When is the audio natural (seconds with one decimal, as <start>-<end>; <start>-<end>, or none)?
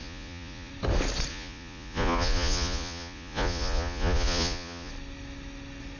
0.7-1.3; 4.9-6.0